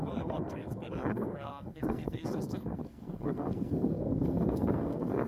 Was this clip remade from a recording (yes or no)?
yes